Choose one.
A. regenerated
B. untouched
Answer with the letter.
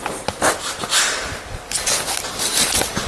B